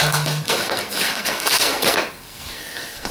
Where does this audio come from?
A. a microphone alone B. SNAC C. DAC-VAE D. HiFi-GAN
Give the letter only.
B